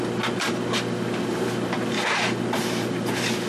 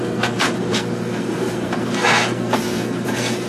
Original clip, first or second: first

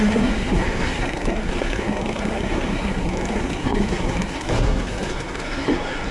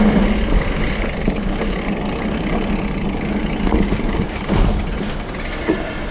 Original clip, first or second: second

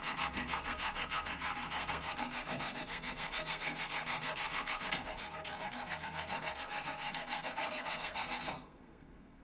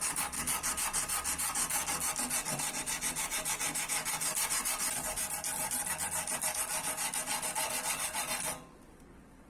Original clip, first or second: second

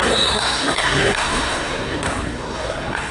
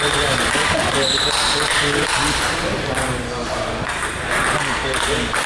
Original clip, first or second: second